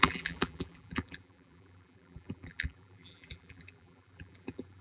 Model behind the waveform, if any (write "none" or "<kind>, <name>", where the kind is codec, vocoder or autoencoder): vocoder, BigVGAN v2